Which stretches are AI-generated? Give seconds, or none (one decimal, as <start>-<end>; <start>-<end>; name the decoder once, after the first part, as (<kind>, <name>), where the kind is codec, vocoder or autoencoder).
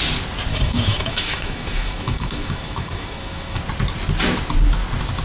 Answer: 0.5-3.6 (autoencoder, DAC-VAE)